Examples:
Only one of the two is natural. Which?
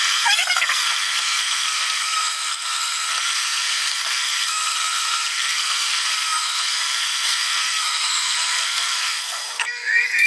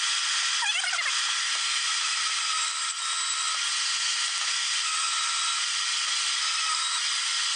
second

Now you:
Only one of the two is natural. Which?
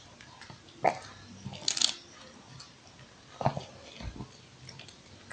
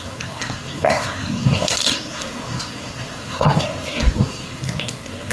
first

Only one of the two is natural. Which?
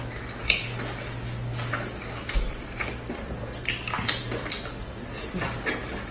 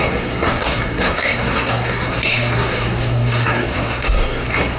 first